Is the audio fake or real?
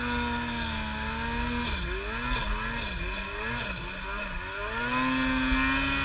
real